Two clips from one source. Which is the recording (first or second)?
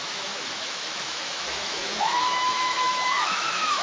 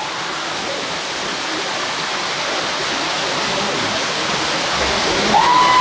second